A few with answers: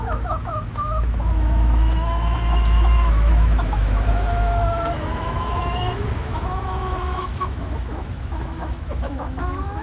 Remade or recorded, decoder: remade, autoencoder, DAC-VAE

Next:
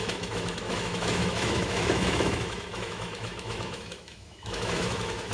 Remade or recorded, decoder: remade, autoencoder, DAC-VAE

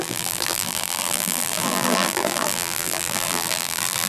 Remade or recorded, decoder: remade, vocoder, BigVGAN v2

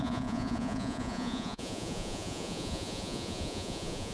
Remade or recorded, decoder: remade, vocoder, Vocos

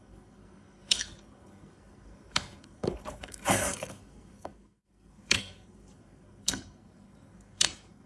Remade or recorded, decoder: remade, codec, SNAC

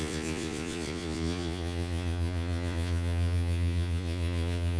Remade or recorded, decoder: remade, vocoder, Vocos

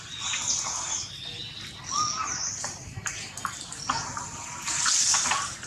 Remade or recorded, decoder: recorded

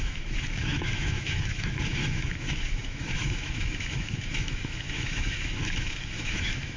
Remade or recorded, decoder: remade, autoencoder, DAC-VAE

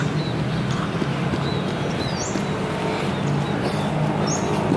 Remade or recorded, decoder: recorded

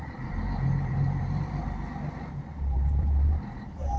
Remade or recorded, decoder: remade, vocoder, BigVGAN v2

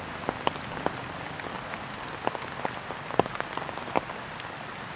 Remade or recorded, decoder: recorded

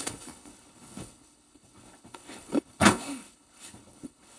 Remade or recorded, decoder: remade, codec, HILCodec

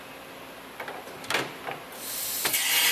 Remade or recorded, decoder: recorded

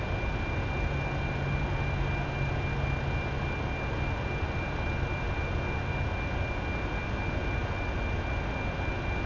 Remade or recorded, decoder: recorded